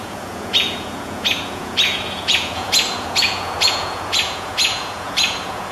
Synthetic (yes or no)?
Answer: yes